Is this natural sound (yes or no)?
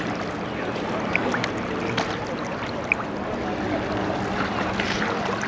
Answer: yes